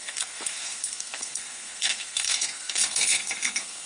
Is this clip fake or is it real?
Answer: fake